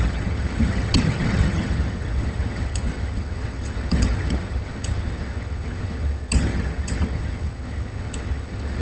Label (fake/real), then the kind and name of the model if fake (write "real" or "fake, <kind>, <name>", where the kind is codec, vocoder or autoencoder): fake, vocoder, HiFi-GAN